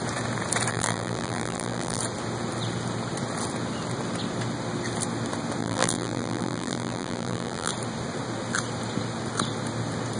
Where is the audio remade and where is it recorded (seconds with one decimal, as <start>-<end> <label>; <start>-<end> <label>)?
0.0-0.7 recorded; 0.7-2.0 remade; 2.0-5.6 recorded; 5.6-7.7 remade; 7.7-10.2 recorded